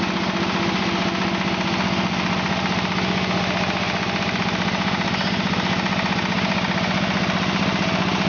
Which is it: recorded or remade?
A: recorded